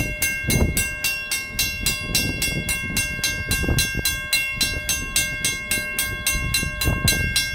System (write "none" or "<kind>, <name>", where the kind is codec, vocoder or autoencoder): none